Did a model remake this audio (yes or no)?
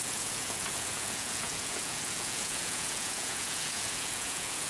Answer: yes